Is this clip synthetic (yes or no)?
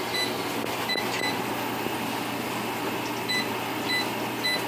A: no